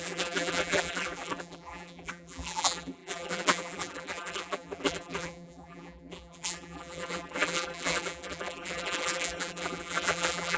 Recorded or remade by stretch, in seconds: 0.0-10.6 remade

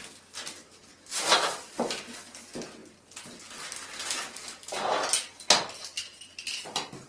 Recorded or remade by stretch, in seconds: 0.0-7.1 recorded

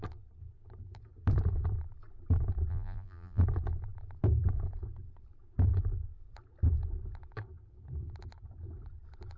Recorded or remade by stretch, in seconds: 0.0-2.7 recorded; 2.7-3.4 remade; 3.4-9.4 recorded

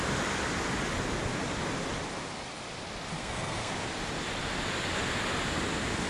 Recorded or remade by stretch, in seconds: 0.0-3.2 recorded; 3.2-3.7 remade; 3.7-6.1 recorded

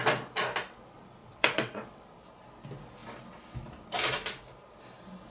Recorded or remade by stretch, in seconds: 0.0-1.2 recorded; 1.2-2.0 remade; 2.0-5.3 recorded